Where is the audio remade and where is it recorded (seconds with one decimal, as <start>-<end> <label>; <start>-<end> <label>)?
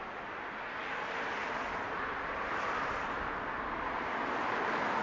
0.0-5.0 recorded